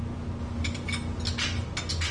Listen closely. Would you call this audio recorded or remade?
recorded